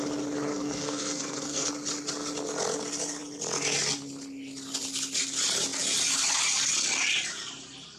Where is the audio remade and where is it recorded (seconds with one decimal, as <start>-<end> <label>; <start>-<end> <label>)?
0.0-0.5 recorded; 0.5-1.7 remade; 1.7-8.0 recorded

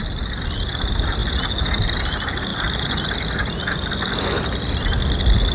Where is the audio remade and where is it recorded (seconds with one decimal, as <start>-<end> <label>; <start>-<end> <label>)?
0.0-5.5 recorded

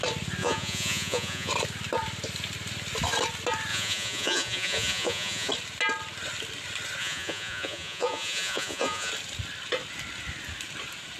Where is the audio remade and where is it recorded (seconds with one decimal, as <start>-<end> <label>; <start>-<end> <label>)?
0.0-0.4 recorded; 0.4-1.5 remade; 1.5-3.7 recorded; 3.7-5.5 remade; 5.5-7.0 recorded; 7.0-9.1 remade; 9.1-11.2 recorded

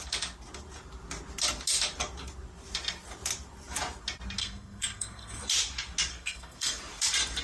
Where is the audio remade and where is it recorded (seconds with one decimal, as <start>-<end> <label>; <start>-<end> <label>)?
0.0-4.4 recorded; 4.4-5.4 remade; 5.4-6.1 recorded; 6.1-6.8 remade; 6.8-7.4 recorded